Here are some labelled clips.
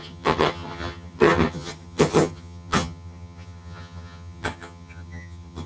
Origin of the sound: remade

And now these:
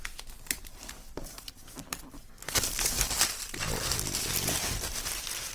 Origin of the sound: remade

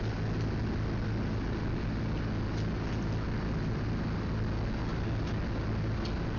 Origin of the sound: recorded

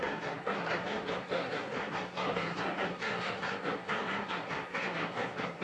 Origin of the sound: remade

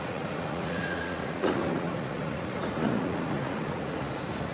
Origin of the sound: remade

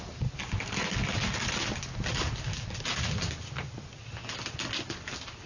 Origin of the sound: recorded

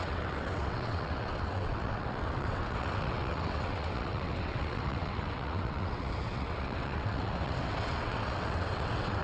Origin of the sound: remade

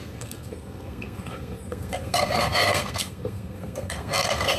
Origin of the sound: remade